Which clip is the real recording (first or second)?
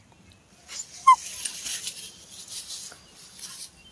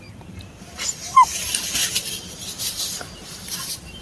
first